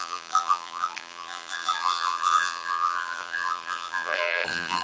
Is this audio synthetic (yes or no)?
yes